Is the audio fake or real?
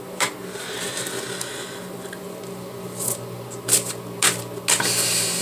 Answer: real